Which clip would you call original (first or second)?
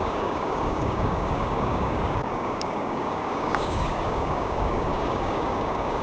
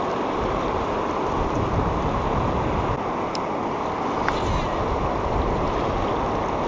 second